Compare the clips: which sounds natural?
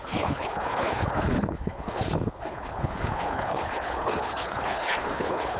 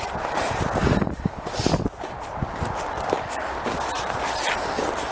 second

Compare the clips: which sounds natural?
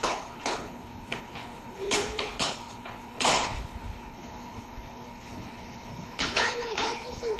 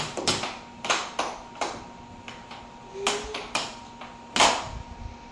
second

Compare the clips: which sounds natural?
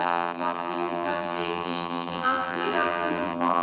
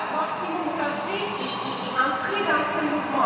second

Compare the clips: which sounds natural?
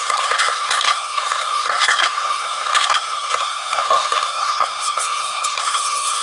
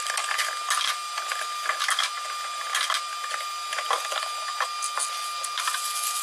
second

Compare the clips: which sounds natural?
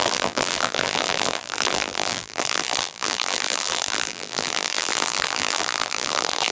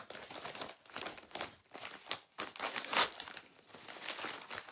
second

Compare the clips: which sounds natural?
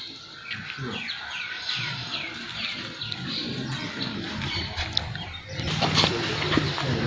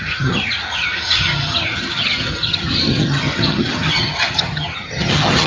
first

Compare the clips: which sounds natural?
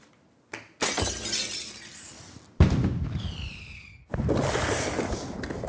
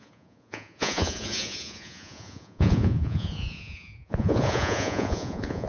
first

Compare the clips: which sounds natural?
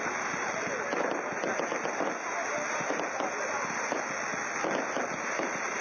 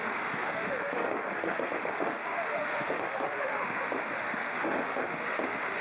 first